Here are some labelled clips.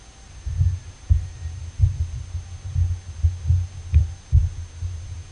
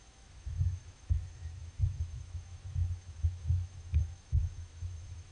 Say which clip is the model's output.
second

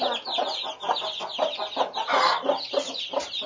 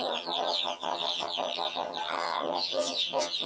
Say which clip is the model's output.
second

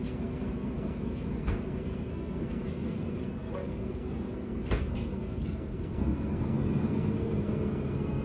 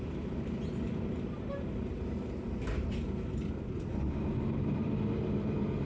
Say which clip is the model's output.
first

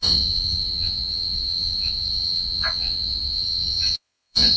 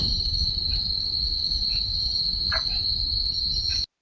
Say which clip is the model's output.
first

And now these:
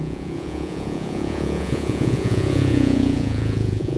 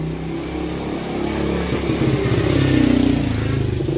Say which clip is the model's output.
first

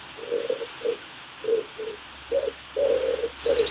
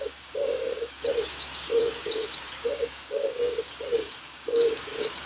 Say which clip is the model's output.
second